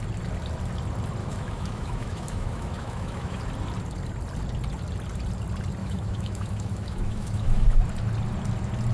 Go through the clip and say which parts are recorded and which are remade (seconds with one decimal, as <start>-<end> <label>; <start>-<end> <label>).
0.0-1.2 recorded; 1.2-3.4 remade; 3.4-5.8 recorded; 5.8-7.8 remade; 7.8-8.9 recorded